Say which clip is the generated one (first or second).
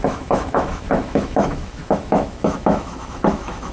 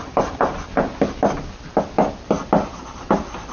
first